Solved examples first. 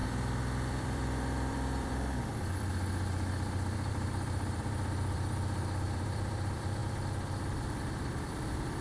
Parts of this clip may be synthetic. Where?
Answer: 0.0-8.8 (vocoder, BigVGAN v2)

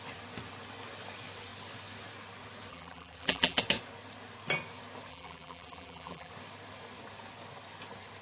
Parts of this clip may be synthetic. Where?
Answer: 2.7-3.6 (vocoder, BigVGAN v2); 5.1-6.3

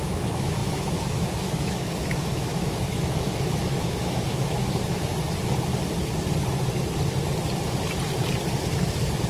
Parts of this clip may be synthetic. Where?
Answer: 0.0-5.1 (autoencoder, DAC-VAE)

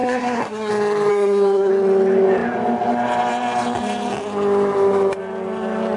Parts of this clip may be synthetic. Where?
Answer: 0.0-0.7 (codec, SNAC); 1.1-1.7

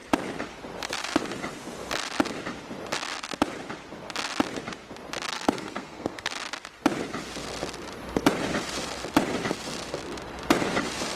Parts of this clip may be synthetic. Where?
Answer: 5.3-6.3 (codec, SNAC)

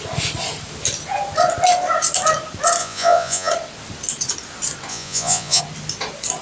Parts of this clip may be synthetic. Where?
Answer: 2.8-3.5 (vocoder, Vocos); 4.9-5.6